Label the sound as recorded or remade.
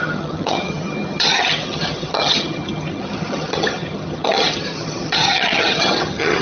remade